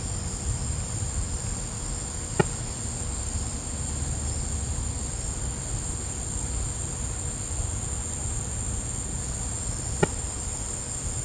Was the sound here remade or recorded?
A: recorded